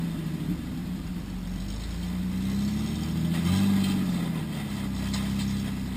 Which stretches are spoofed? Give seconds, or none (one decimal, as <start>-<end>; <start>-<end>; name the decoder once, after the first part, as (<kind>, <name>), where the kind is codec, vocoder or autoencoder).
none